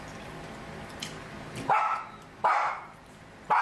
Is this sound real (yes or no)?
yes